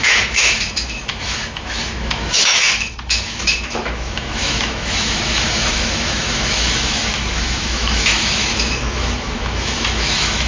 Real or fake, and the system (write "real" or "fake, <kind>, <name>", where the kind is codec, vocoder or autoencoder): fake, autoencoder, DAC-VAE